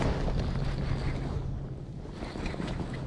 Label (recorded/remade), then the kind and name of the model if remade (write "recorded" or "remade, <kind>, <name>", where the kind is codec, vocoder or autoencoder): recorded